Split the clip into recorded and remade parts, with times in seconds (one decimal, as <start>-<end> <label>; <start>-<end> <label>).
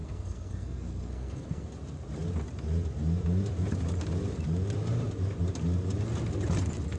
0.0-1.7 remade; 1.7-7.0 recorded